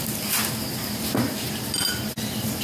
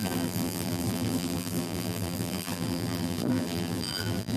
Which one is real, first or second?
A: first